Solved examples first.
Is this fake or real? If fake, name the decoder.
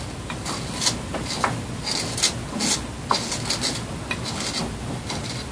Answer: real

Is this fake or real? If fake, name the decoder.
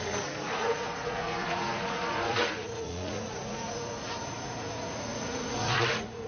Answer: fake, vocoder, Vocos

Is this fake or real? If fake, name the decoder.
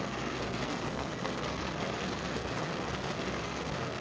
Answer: fake, codec, SNAC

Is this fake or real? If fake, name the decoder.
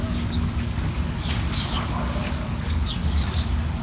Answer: fake, codec, DAC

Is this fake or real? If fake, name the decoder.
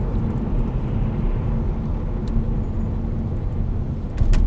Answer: real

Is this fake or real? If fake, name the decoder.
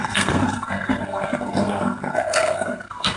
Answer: fake, codec, SNAC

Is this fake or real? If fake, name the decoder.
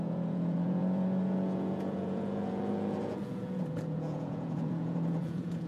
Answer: fake, vocoder, Vocos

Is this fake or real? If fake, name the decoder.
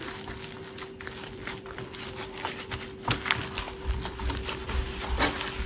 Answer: real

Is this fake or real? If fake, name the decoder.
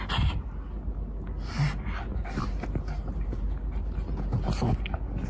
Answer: real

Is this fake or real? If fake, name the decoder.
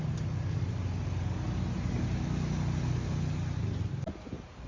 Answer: real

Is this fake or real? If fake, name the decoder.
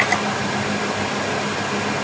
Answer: real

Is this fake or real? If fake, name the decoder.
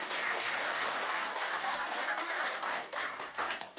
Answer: fake, codec, DAC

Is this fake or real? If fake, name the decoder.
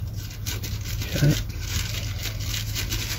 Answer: real